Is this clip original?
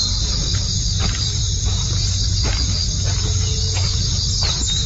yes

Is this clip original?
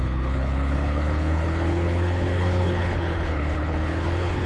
no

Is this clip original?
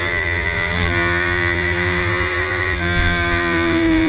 no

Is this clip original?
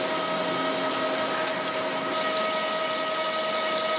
yes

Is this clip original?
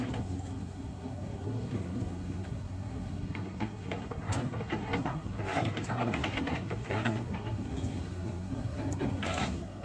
no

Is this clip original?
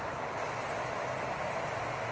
yes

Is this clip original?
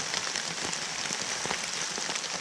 yes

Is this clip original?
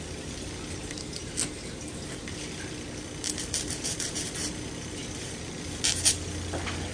yes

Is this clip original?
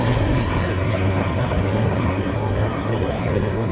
no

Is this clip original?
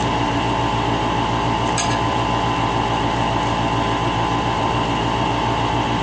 no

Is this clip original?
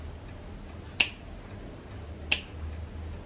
yes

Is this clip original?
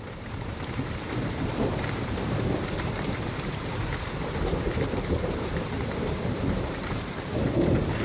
no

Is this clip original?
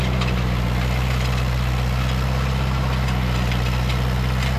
no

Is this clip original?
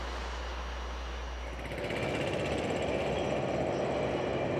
yes